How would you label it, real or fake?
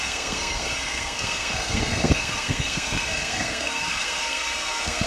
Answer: fake